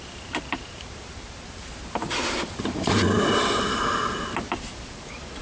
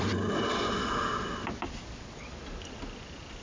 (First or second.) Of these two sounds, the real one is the second